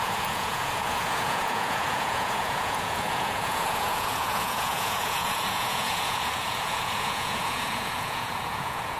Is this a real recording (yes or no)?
no